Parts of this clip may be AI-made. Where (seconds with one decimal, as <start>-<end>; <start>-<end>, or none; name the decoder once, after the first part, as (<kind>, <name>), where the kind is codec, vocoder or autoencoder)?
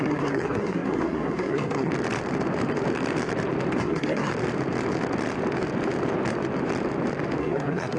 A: 0.0-1.9 (codec, SNAC); 3.8-4.3; 7.4-8.0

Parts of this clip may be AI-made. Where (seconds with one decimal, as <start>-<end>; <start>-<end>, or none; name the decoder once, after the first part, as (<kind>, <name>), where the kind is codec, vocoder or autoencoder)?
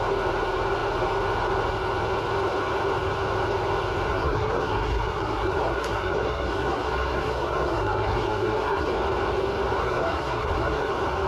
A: 4.1-8.9 (codec, SNAC); 9.8-10.9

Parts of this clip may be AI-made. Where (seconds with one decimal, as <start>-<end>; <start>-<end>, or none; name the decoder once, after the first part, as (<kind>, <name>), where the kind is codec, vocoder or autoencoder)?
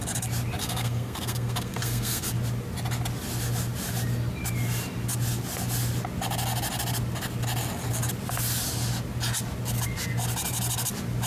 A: 0.6-2.3 (codec, SNAC)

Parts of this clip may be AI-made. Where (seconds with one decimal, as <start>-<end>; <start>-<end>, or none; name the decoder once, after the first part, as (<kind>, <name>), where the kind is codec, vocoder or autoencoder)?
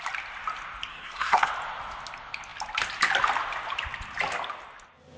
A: 0.9-1.5 (codec, SNAC)